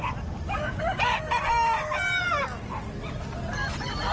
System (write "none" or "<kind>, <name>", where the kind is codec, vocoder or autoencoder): none